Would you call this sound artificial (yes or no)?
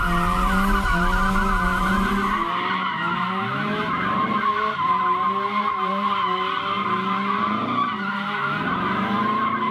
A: yes